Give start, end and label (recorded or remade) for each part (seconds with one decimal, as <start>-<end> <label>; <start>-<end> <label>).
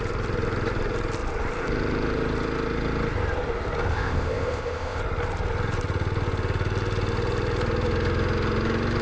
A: 0.0-3.9 recorded; 3.9-5.0 remade; 5.0-9.0 recorded